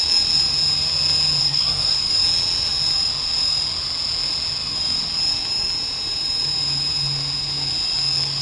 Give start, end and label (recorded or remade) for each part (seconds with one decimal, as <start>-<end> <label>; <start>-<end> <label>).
0.0-1.4 recorded; 1.4-2.1 remade; 2.1-8.4 recorded